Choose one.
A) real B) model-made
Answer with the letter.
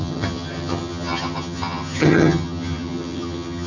B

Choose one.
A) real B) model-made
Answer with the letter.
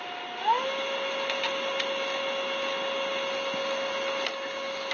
A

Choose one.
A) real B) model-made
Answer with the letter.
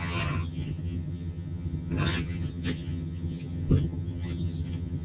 B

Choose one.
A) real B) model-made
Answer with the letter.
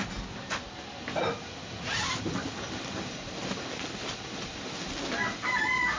A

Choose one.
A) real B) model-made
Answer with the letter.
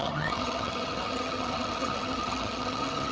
B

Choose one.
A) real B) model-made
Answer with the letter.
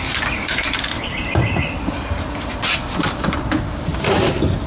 A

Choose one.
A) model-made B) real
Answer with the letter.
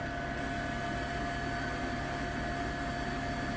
B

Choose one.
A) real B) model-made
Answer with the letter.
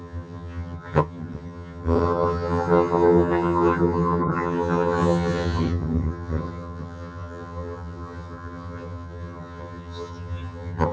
B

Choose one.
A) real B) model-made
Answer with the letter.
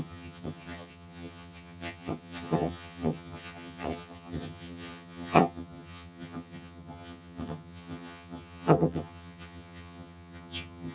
B